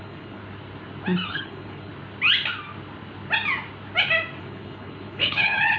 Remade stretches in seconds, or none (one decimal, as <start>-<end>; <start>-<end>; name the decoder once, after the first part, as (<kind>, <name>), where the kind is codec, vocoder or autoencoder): 0.0-0.4 (codec, HILCodec); 1.3-1.9; 4.4-5.8

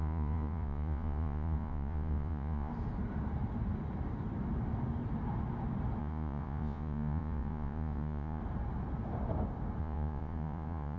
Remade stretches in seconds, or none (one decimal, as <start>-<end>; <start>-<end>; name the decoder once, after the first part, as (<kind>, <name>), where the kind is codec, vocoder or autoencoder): 0.0-2.7 (vocoder, Vocos); 6.0-8.4; 9.8-11.0

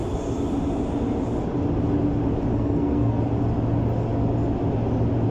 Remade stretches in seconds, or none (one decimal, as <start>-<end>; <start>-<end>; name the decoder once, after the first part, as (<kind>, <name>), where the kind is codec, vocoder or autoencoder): 2.5-3.2 (codec, SNAC)

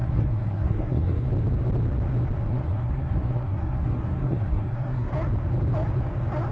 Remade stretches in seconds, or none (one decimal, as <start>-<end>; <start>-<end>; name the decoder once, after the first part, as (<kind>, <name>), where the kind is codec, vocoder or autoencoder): 0.0-1.3 (codec, SNAC); 2.5-5.1

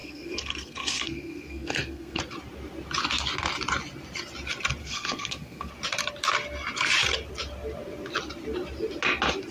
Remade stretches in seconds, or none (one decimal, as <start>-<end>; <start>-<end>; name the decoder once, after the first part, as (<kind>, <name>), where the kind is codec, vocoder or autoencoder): 0.0-2.2 (codec, SNAC); 4.8-5.7